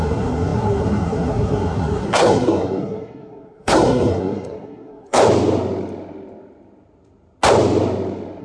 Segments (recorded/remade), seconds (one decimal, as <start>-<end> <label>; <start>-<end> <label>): 0.0-5.2 remade; 5.2-8.4 recorded

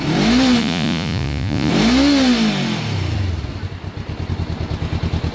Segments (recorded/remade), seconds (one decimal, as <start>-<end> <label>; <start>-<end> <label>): 0.0-0.6 recorded; 0.6-1.7 remade; 1.7-5.3 recorded

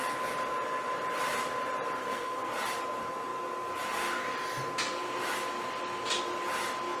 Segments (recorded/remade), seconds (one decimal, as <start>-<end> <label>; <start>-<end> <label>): 0.0-2.0 recorded; 2.0-2.5 remade; 2.5-7.0 recorded

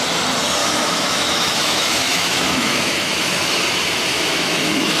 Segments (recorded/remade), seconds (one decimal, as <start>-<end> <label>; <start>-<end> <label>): 0.0-0.6 recorded; 0.6-3.6 remade; 3.6-4.1 recorded; 4.1-5.0 remade

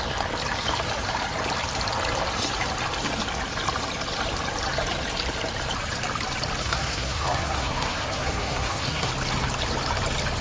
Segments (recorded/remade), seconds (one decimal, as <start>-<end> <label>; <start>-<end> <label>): 0.0-6.6 recorded; 6.6-9.1 remade; 9.1-10.4 recorded

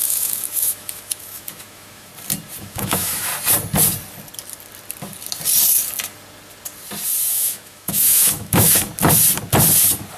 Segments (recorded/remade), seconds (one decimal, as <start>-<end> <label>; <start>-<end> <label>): 0.0-2.1 remade; 2.1-2.6 recorded; 2.6-3.3 remade; 3.3-7.3 recorded; 7.3-8.9 remade; 8.9-10.2 recorded

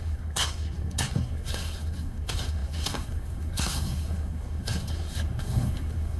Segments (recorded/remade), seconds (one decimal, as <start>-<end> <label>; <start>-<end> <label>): 0.0-6.2 remade

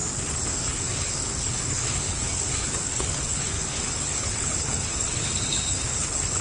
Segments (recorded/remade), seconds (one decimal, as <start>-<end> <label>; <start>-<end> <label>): 0.0-0.6 recorded; 0.6-6.4 remade